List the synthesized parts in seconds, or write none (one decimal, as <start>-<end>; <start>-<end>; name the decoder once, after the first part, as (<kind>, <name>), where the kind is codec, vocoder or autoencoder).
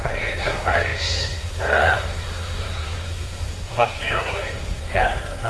0.0-5.5 (codec, SNAC)